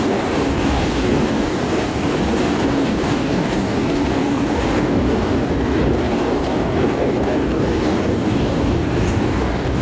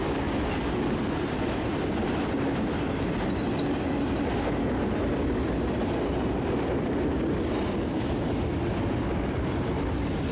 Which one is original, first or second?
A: second